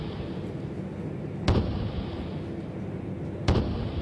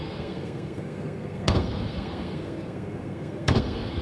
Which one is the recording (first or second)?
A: first